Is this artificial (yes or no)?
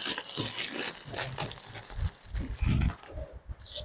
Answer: no